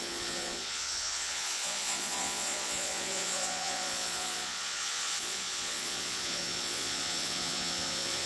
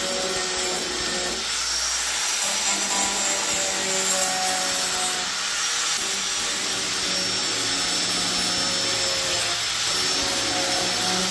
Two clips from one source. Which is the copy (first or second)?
first